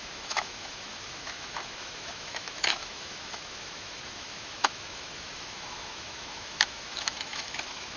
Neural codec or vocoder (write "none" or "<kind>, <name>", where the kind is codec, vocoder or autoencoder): autoencoder, DAC-VAE